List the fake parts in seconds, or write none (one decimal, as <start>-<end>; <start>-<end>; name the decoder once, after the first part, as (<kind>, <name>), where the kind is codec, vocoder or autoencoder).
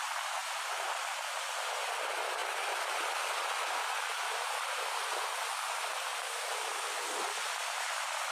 0.4-0.9 (vocoder, BigVGAN v2); 6.1-6.7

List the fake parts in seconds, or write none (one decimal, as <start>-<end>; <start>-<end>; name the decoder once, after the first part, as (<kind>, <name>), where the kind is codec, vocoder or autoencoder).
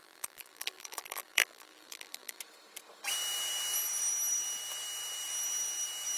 0.0-2.4 (vocoder, BigVGAN v2)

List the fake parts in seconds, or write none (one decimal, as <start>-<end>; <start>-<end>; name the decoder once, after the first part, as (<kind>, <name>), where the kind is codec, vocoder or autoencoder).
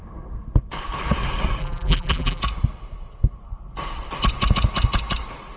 1.6-2.4 (vocoder, BigVGAN v2)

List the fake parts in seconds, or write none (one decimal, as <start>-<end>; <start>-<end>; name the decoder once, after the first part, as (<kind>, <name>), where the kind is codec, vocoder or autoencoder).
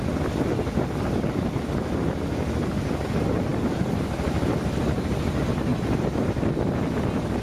3.5-4.5 (vocoder, BigVGAN v2); 5.7-6.5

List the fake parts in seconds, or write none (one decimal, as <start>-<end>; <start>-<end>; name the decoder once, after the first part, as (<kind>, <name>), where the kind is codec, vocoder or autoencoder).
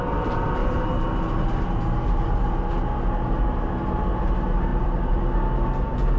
4.7-5.2 (vocoder, BigVGAN v2)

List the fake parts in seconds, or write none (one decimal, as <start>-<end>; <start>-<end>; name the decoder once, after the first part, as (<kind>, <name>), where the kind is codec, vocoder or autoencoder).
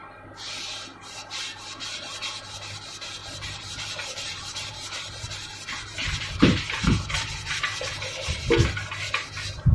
3.2-6.6 (vocoder, BigVGAN v2)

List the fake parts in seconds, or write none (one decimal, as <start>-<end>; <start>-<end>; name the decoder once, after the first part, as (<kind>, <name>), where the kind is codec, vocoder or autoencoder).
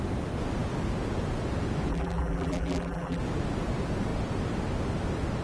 1.9-3.2 (vocoder, BigVGAN v2)